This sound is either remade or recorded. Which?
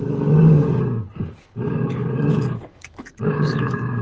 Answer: remade